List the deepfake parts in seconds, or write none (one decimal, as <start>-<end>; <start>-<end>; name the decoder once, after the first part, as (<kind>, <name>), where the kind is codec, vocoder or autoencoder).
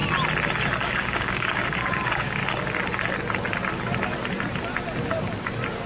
0.8-2.4 (codec, DAC)